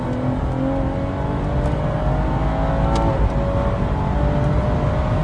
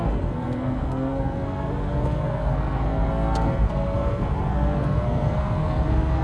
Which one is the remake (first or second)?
second